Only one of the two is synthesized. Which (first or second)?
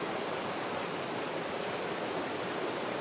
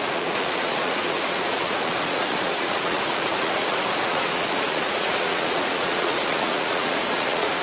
second